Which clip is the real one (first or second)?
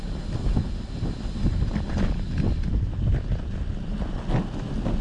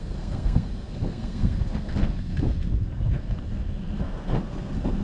first